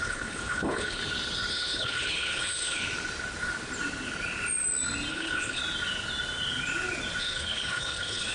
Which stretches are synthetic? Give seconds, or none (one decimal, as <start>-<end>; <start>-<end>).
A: 0.0-1.0; 1.5-2.8; 5.1-5.6; 7.2-8.3